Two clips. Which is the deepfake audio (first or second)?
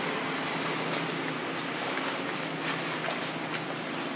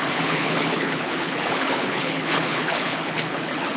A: second